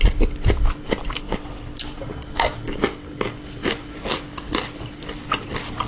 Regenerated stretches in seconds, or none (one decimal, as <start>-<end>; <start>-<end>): 1.2-2.0